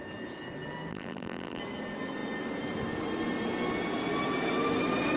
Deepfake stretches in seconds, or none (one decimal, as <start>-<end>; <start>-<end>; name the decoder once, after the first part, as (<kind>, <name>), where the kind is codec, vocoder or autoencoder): 0.9-1.6 (vocoder, BigVGAN v2)